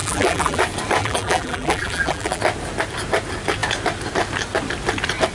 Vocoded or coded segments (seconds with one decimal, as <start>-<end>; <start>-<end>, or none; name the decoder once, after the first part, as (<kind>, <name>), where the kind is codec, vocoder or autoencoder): 0.0-0.6 (vocoder, BigVGAN v2); 1.0-2.4